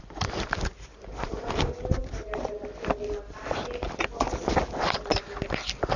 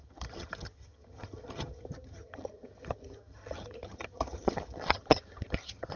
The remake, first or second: second